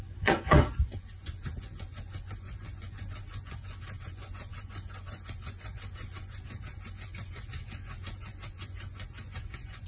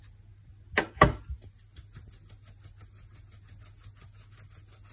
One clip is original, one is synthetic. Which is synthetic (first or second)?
first